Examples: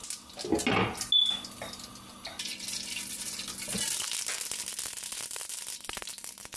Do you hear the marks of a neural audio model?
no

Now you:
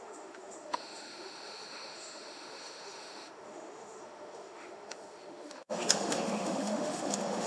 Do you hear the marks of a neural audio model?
yes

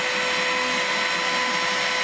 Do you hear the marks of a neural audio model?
no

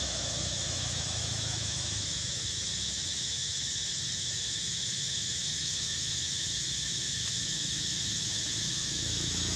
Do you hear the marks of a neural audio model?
yes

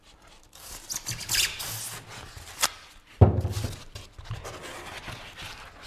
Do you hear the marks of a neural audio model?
no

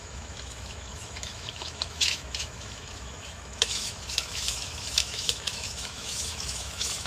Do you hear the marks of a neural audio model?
yes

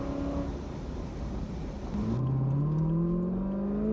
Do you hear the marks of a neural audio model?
no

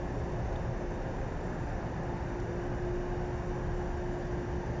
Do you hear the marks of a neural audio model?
no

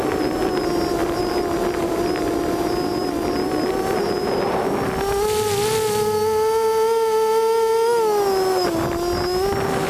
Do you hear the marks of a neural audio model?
no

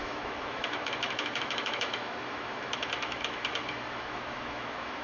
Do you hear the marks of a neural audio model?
yes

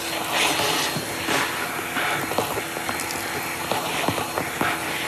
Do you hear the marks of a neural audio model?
no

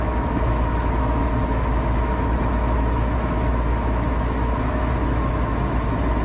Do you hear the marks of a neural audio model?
yes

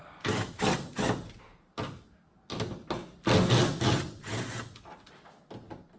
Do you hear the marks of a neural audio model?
no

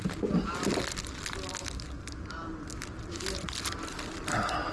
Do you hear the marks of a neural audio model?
no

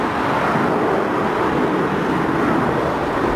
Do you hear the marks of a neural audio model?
no